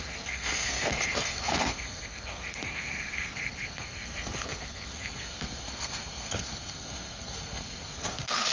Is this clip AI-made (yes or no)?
yes